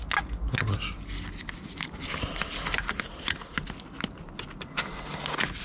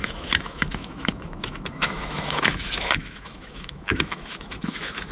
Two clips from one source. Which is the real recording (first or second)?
first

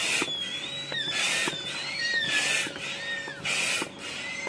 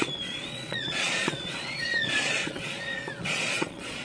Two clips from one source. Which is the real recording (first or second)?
first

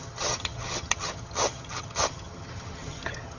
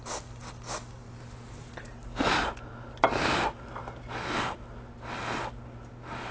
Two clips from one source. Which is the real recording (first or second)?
second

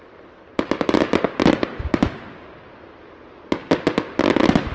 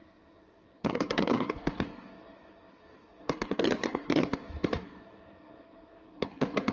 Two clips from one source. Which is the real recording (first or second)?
first